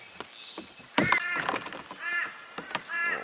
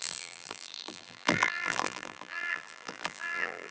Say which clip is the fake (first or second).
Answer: second